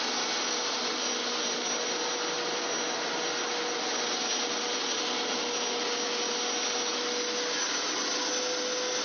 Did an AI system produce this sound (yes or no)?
no